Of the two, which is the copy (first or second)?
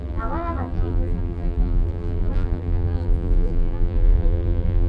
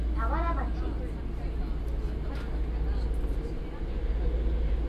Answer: first